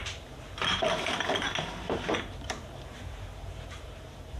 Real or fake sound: fake